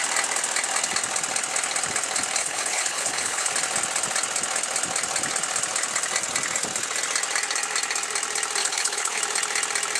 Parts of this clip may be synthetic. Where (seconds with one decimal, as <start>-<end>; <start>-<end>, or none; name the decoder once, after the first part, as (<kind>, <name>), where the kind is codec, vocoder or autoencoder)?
2.4-3.5 (codec, HILCodec); 8.6-9.2

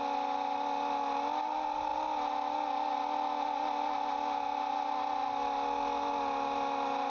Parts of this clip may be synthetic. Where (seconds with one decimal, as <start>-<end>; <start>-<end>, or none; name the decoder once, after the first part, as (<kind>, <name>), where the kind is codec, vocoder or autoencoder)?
none

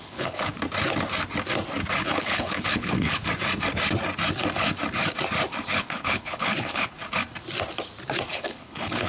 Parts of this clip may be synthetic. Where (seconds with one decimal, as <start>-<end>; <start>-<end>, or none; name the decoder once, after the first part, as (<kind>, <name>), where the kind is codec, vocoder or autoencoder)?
0.0-0.5 (codec, HILCodec); 2.0-3.2; 5.7-7.0; 8.3-9.1

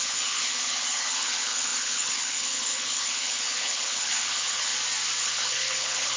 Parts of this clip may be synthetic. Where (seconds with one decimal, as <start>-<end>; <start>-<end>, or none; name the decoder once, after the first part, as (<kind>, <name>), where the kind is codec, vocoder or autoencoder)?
0.0-4.7 (codec, HILCodec); 5.2-6.2

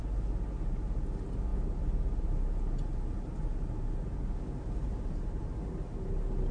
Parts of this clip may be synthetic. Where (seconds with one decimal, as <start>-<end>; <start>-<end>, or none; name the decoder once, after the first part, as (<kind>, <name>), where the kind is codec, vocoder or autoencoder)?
none